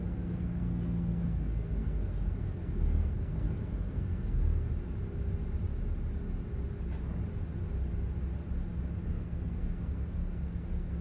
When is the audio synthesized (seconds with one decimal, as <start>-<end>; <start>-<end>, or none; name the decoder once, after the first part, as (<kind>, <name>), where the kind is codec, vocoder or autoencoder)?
0.0-4.7 (codec, SNAC); 9.1-11.0